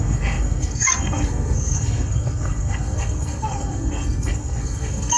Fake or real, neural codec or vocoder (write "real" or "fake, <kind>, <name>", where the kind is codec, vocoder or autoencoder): fake, codec, SNAC